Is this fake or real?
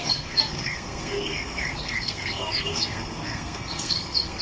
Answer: fake